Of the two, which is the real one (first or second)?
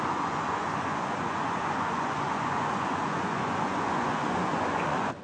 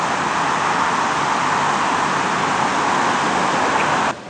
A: second